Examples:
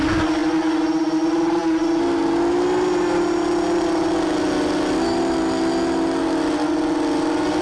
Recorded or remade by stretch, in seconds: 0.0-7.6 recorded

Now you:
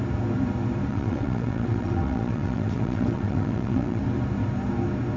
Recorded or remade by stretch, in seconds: 0.0-0.9 recorded; 0.9-4.0 remade; 4.0-5.2 recorded